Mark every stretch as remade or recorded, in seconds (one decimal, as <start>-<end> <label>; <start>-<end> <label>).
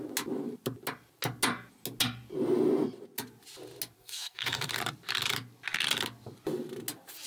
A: 0.0-4.0 recorded; 4.0-4.7 remade; 4.7-7.3 recorded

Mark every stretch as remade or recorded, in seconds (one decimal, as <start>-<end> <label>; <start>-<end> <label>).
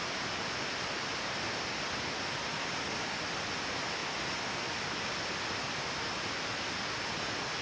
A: 0.0-7.6 recorded